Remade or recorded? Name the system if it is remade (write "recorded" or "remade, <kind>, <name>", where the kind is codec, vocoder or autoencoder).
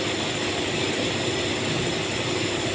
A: recorded